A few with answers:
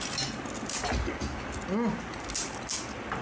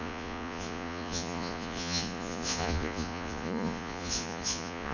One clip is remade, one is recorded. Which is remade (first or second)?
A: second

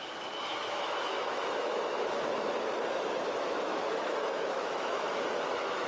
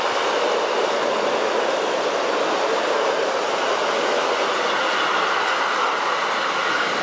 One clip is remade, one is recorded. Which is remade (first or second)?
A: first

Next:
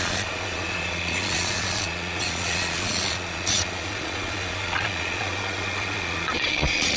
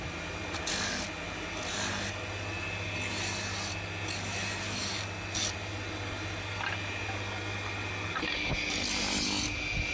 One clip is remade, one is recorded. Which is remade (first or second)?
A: first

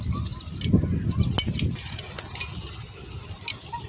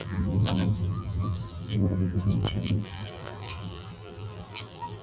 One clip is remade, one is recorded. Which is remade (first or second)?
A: second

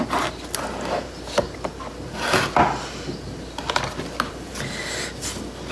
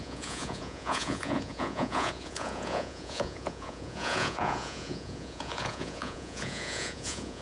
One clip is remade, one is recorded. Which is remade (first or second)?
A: second